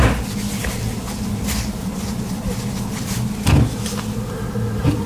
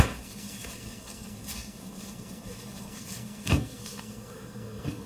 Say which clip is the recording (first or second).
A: first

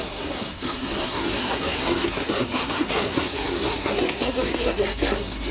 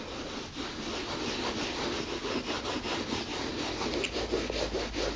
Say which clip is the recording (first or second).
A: second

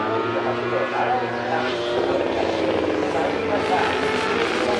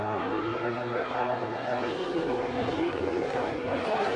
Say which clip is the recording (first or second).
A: first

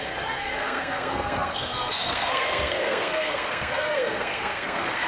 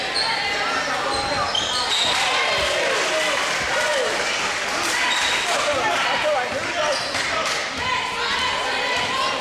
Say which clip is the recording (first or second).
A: second